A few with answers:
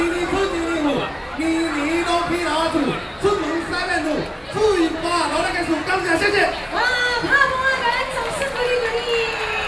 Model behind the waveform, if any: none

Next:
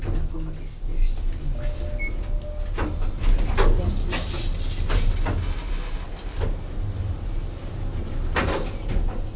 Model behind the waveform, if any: none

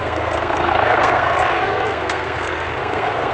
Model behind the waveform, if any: codec, SNAC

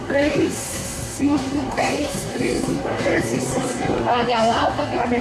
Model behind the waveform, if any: codec, SNAC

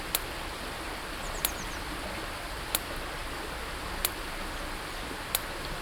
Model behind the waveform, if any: none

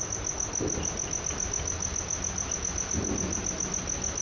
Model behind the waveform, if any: none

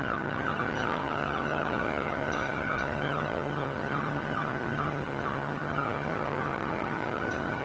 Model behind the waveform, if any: vocoder, HiFi-GAN